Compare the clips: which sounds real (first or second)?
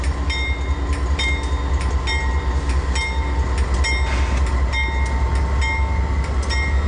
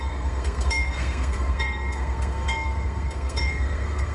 first